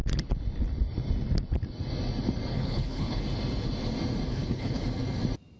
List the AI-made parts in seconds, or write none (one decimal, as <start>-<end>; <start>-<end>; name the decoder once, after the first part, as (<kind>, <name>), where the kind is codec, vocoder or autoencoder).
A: 2.5-3.2 (codec, HILCodec); 4.3-4.8